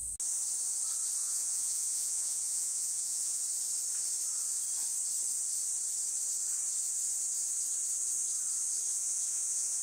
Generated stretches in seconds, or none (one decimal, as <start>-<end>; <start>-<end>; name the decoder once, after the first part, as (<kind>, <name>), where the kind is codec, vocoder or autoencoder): 1.2-3.4 (vocoder, Vocos); 8.9-9.8